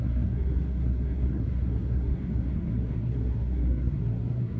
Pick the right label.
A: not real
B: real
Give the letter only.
A